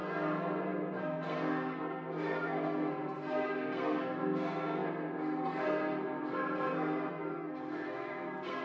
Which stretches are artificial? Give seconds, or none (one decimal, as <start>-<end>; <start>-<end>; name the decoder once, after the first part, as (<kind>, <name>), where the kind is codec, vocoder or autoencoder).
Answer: 0.0-8.6 (codec, SNAC)